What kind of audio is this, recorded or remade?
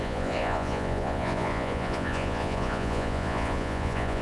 remade